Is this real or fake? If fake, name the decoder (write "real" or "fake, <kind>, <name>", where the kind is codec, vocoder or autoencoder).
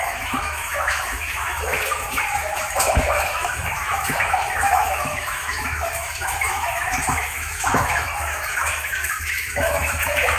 fake, autoencoder, DAC-VAE